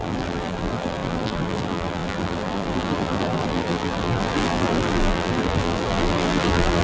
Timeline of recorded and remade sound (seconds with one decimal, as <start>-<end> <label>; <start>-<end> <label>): 0.0-6.8 remade